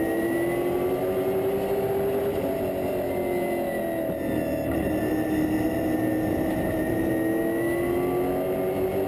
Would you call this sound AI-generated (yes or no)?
no